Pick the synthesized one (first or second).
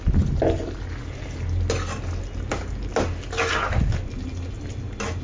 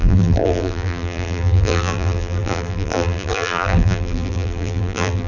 second